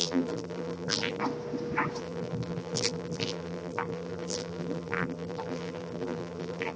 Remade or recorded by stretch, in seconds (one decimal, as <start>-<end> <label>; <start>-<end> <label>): 0.0-1.2 remade; 1.2-2.0 recorded; 2.0-6.8 remade